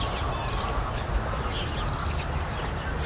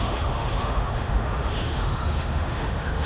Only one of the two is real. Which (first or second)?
first